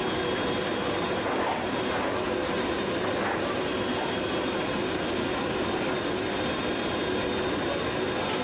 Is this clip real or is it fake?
real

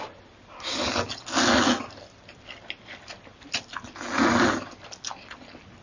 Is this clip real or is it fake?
real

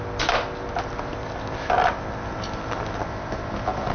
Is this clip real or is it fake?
real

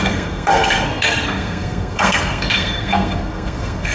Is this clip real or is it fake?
fake